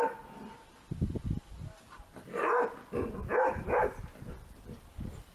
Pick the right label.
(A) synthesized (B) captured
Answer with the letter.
B